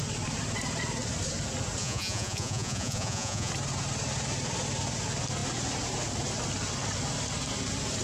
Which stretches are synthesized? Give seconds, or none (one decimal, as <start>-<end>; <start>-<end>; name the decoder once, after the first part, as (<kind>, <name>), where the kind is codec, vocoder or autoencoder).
1.8-3.5 (vocoder, Vocos)